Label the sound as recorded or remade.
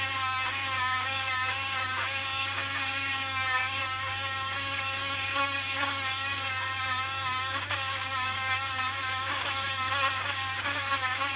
remade